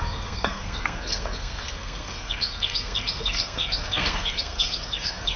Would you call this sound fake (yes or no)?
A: yes